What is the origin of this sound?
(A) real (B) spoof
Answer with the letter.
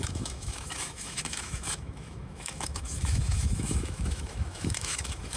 B